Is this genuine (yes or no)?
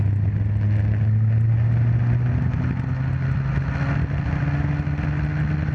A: yes